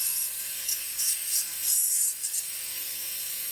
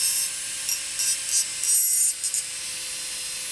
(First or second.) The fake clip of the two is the first